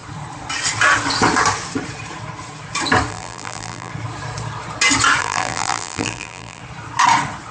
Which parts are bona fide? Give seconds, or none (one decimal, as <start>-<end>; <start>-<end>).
0.0-3.1; 3.9-5.2; 6.6-7.5